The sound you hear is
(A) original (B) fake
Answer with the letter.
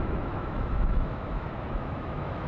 B